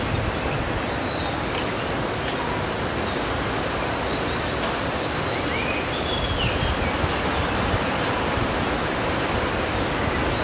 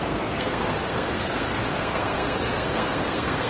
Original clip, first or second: first